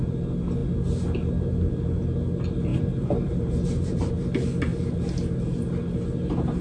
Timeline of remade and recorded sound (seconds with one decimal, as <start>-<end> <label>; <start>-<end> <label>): 0.0-2.7 recorded; 2.7-4.1 remade; 4.1-6.6 recorded